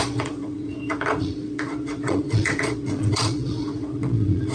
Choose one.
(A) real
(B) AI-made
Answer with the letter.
B